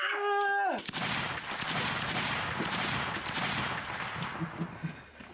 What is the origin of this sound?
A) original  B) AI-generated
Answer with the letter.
A